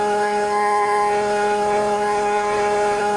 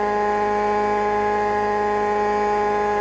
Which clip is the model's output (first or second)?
first